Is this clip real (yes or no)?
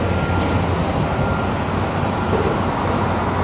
yes